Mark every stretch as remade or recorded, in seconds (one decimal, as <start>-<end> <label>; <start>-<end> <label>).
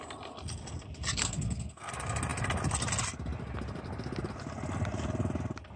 0.0-1.2 recorded; 1.2-1.9 remade; 1.9-5.8 recorded